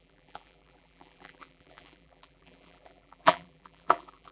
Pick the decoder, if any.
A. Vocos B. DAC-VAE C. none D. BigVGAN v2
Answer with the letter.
D